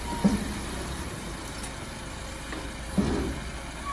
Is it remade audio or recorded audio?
recorded